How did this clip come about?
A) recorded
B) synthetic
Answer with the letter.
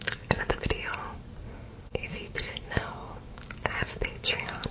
B